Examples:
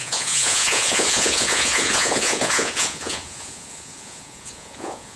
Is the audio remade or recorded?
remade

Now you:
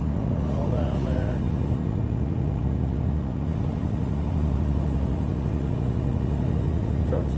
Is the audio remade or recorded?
remade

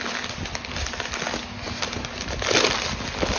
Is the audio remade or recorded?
recorded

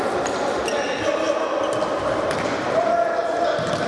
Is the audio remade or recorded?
recorded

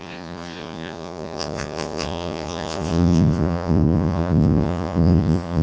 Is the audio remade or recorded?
remade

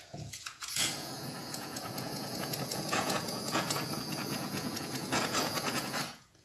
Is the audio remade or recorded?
remade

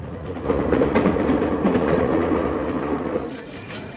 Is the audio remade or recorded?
remade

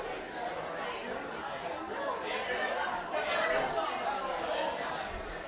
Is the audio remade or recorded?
recorded